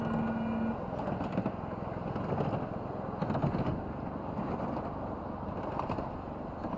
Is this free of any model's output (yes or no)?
yes